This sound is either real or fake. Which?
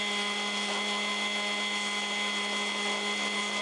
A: real